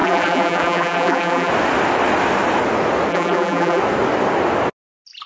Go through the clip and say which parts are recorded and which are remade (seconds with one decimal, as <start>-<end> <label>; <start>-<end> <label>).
0.0-1.5 remade; 1.5-3.1 recorded; 3.1-3.8 remade; 3.8-5.3 recorded